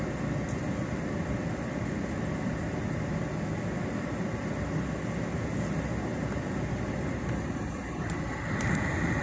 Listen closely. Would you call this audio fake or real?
real